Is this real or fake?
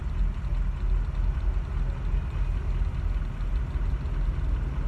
real